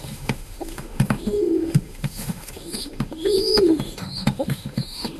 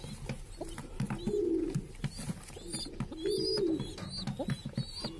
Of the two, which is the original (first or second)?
second